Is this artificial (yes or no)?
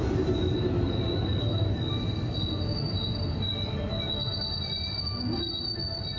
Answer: no